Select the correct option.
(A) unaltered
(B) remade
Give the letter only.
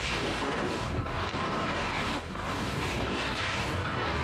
B